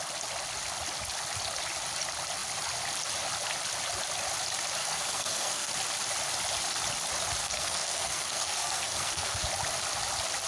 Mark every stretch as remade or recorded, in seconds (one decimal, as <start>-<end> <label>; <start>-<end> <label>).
0.0-4.8 recorded; 4.8-5.7 remade; 5.7-7.4 recorded; 7.4-9.4 remade; 9.4-10.5 recorded